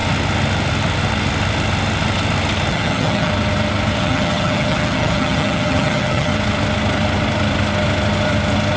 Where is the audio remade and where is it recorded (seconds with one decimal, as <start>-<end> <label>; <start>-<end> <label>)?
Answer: 0.0-2.7 recorded; 2.7-3.3 remade; 3.3-4.0 recorded; 4.0-6.3 remade; 6.3-8.8 recorded